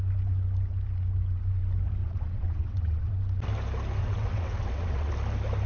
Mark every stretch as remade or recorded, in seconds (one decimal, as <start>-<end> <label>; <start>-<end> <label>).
0.0-2.0 recorded; 2.0-3.1 remade; 3.1-4.0 recorded; 4.0-5.1 remade; 5.1-5.7 recorded